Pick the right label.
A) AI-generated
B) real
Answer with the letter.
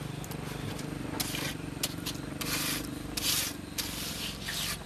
B